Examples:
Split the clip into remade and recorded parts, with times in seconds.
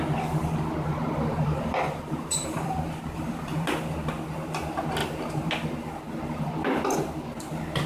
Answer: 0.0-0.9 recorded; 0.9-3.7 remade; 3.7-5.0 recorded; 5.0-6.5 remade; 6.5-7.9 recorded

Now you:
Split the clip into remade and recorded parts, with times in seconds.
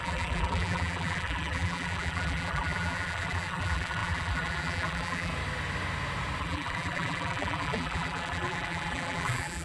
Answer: 0.0-5.3 remade; 5.3-6.4 recorded; 6.4-9.6 remade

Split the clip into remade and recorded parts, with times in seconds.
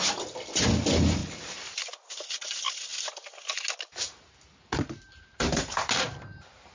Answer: 0.0-1.2 remade; 1.2-1.8 recorded; 1.8-2.9 remade; 2.9-5.2 recorded; 5.2-6.7 remade